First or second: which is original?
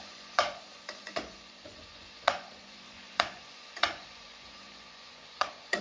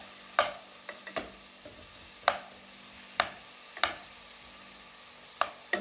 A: second